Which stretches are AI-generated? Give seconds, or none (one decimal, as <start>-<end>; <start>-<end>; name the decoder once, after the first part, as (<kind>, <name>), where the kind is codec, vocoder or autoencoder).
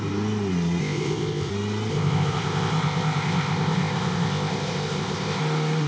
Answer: 0.8-1.5 (codec, ZipCodec); 1.9-5.4